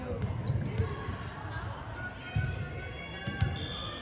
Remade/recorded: recorded